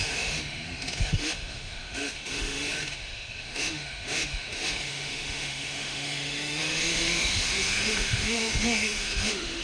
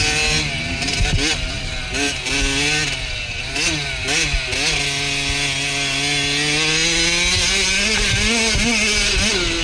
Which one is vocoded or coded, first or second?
first